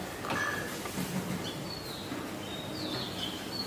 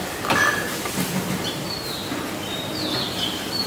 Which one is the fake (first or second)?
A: second